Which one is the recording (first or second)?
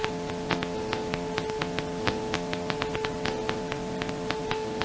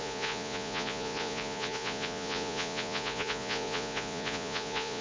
first